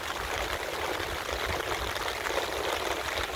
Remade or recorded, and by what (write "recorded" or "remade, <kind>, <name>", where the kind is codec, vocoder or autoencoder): remade, vocoder, BigVGAN v2